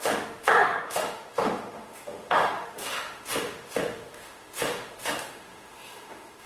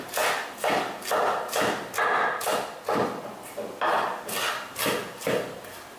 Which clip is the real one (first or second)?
second